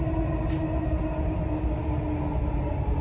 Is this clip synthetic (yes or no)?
no